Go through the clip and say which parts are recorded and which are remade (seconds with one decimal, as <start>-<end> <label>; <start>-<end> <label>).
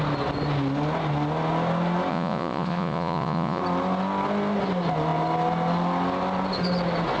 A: 0.0-2.1 recorded; 2.1-3.6 remade; 3.6-7.2 recorded